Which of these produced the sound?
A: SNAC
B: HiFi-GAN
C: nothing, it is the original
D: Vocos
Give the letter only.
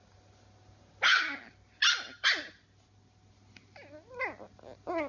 C